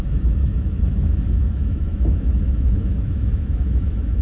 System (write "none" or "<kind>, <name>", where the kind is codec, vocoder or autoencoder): autoencoder, DAC-VAE